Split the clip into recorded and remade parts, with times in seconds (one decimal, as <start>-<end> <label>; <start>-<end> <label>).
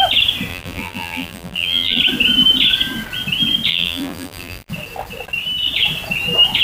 0.0-0.5 recorded; 0.5-2.0 remade; 2.0-3.7 recorded; 3.7-4.7 remade; 4.7-6.6 recorded